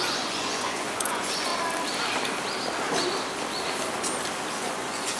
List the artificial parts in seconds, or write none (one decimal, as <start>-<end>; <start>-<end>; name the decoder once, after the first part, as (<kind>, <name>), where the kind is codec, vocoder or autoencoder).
0.0-1.5 (vocoder, Vocos); 4.6-5.2